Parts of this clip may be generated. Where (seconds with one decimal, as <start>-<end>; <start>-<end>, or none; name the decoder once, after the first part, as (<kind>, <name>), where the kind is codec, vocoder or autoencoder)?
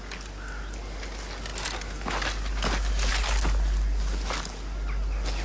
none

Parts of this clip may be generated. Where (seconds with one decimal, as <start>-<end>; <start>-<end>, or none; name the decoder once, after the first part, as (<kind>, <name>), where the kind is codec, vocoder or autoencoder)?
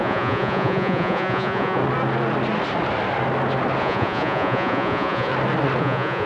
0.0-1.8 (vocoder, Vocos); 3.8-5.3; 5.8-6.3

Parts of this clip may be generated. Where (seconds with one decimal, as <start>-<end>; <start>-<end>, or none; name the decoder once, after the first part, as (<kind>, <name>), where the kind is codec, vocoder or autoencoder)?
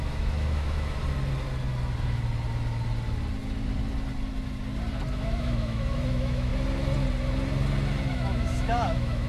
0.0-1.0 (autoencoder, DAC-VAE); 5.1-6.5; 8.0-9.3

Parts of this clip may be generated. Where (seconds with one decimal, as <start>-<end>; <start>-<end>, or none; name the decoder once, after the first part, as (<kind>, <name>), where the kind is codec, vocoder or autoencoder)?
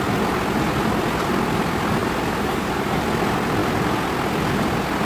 2.0-3.0 (vocoder, BigVGAN v2)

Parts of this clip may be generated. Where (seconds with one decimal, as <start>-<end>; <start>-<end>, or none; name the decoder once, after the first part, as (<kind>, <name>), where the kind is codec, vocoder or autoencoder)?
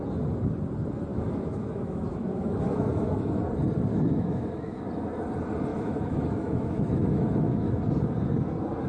1.1-3.4 (autoencoder, DAC-VAE); 3.9-4.8; 5.7-7.8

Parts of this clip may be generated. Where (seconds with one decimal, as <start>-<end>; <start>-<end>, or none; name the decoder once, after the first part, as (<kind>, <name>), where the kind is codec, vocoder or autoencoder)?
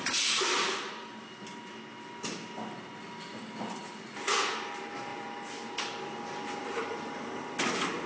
5.1-7.1 (vocoder, BigVGAN v2)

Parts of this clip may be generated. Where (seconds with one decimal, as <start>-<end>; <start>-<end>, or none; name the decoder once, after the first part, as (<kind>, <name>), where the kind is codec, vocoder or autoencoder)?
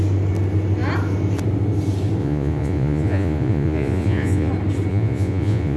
2.2-4.5 (vocoder, Vocos); 4.9-5.8